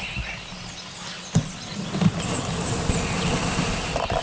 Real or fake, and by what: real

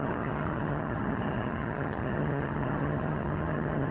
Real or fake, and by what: fake, vocoder, HiFi-GAN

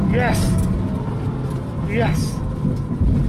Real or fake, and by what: real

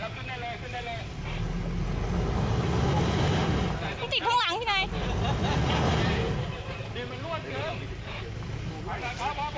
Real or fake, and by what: real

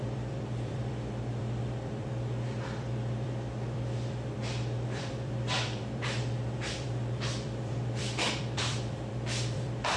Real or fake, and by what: fake, vocoder, BigVGAN v2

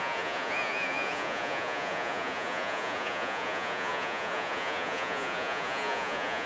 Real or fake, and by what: fake, vocoder, Vocos